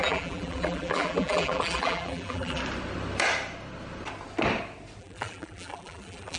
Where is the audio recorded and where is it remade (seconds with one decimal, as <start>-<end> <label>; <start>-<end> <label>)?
0.0-2.6 remade; 2.6-5.0 recorded; 5.0-6.4 remade